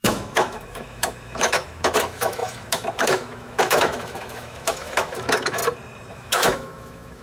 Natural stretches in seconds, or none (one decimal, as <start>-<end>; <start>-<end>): 5.6-6.1